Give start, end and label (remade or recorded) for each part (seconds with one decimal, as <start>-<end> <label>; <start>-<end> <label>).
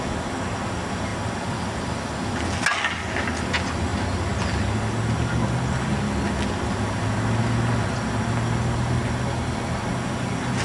0.0-10.6 recorded